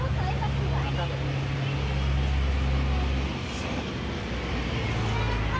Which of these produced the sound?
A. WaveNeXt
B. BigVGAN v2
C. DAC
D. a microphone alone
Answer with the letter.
D